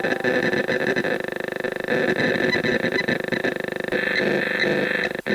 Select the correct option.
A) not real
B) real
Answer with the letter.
A